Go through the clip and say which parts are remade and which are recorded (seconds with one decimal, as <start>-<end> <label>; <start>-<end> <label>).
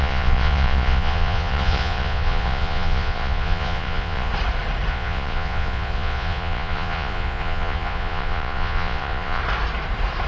0.0-4.3 remade; 4.3-4.9 recorded; 4.9-9.4 remade; 9.4-10.3 recorded